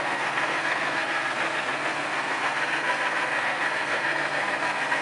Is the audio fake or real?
fake